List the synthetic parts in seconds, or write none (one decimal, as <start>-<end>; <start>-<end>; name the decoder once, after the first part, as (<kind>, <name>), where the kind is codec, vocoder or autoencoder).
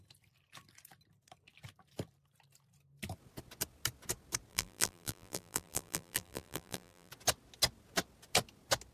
4.5-7.1 (vocoder, BigVGAN v2)